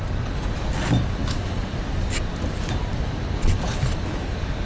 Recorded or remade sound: recorded